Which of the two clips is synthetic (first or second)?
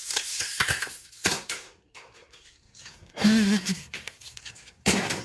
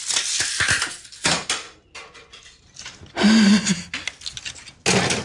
first